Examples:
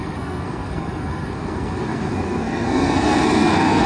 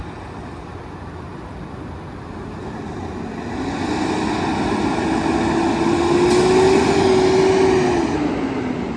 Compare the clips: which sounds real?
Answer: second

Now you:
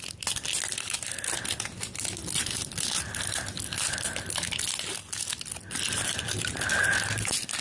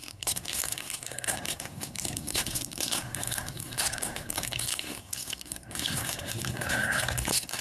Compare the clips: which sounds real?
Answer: first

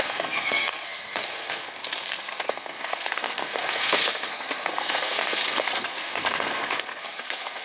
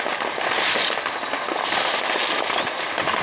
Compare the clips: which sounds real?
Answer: second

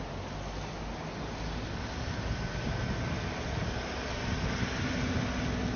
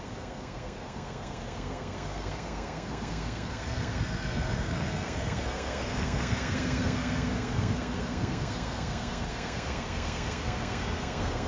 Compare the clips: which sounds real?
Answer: first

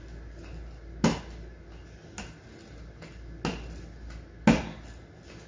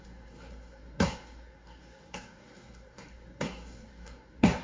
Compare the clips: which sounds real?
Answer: first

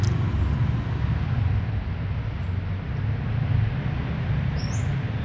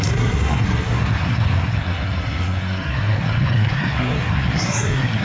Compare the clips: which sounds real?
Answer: first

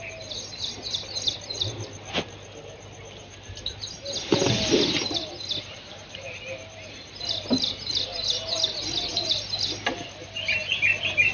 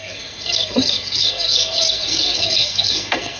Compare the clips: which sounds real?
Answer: first